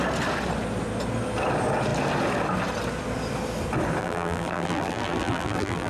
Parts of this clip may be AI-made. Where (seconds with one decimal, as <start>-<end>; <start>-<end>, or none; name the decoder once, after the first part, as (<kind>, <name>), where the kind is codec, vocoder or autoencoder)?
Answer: 4.0-5.9 (vocoder, BigVGAN v2)